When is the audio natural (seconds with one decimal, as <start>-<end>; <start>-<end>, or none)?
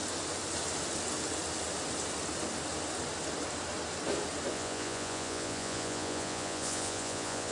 0.0-4.5